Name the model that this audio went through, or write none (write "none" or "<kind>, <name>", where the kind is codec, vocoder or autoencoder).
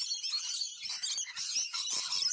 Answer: none